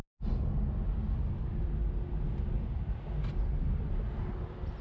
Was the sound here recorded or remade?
recorded